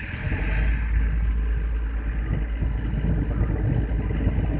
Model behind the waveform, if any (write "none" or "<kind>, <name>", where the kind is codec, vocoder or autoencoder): none